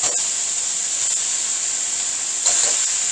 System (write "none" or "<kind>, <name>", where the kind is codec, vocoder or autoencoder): none